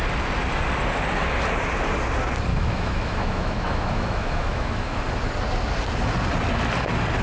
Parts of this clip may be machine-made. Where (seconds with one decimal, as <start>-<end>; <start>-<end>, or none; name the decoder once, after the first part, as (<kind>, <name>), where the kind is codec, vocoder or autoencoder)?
2.5-5.0 (autoencoder, DAC-VAE)